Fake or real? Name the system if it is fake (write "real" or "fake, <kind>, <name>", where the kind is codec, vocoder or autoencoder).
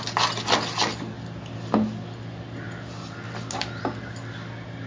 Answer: real